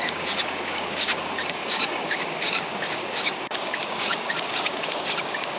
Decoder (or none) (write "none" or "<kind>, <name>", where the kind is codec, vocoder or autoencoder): codec, DAC